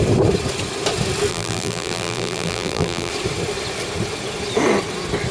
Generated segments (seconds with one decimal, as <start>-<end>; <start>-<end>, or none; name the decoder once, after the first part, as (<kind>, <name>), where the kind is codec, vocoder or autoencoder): 1.3-3.1 (vocoder, BigVGAN v2)